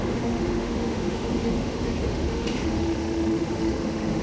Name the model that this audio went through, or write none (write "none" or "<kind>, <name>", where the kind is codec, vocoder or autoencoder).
autoencoder, DAC-VAE